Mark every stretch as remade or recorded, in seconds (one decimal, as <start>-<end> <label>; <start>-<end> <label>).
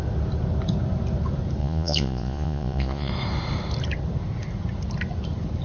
0.0-1.6 recorded; 1.6-3.1 remade; 3.1-5.6 recorded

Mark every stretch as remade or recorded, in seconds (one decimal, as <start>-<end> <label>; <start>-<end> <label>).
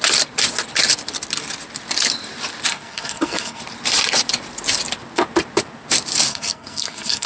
0.0-2.7 recorded; 2.7-3.6 remade; 3.6-6.3 recorded; 6.3-7.3 remade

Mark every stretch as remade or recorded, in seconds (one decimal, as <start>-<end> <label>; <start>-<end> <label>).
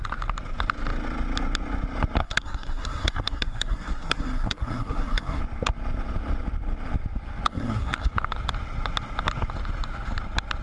0.0-2.2 recorded; 2.2-5.4 remade; 5.4-7.5 recorded; 7.5-8.1 remade; 8.1-10.6 recorded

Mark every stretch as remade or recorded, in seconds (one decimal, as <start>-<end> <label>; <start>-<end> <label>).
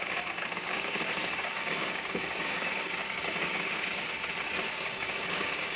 0.0-4.1 remade; 4.1-4.7 recorded; 4.7-5.8 remade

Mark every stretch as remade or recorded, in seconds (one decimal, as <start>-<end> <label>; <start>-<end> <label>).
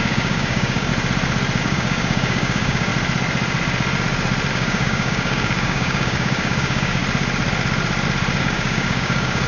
0.0-0.9 remade; 0.9-1.6 recorded; 1.6-2.9 remade; 2.9-4.5 recorded; 4.5-7.0 remade; 7.0-8.4 recorded; 8.4-9.5 remade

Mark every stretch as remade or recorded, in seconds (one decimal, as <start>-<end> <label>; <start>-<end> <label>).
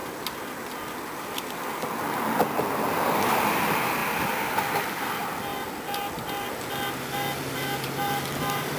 0.0-8.8 recorded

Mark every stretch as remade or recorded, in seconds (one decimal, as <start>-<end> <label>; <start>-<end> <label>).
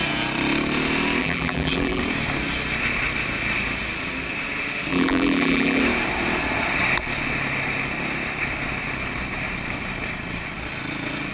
0.0-1.2 recorded; 1.2-2.0 remade; 2.0-4.9 recorded; 4.9-5.8 remade; 5.8-11.3 recorded